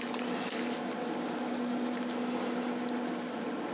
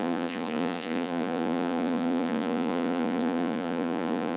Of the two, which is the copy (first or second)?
second